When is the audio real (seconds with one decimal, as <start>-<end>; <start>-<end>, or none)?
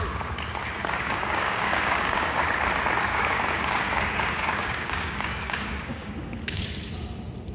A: 0.0-0.8; 2.4-3.1; 6.6-7.5